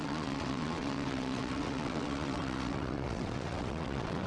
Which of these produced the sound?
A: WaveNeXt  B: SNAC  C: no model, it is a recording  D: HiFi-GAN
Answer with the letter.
A